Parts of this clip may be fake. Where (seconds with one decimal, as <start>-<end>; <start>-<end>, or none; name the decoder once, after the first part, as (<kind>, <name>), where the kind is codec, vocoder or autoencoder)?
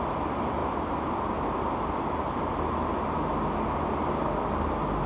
none